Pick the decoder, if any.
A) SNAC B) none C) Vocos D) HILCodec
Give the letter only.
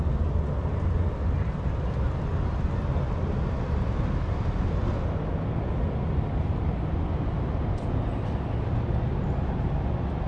B